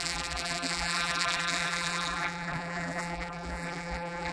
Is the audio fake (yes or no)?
yes